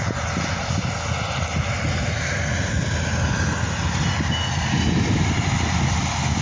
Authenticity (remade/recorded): recorded